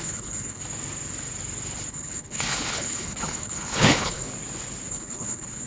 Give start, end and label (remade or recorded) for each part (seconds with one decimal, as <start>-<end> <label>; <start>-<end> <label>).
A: 0.0-0.6 remade; 0.6-1.9 recorded; 1.9-4.3 remade; 4.3-4.9 recorded; 4.9-5.7 remade